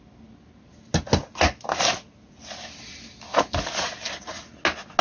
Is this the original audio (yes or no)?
yes